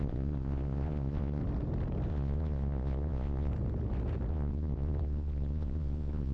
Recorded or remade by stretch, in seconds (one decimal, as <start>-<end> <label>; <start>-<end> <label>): 0.0-1.4 remade; 1.4-2.1 recorded; 2.1-3.5 remade; 3.5-4.3 recorded; 4.3-6.3 remade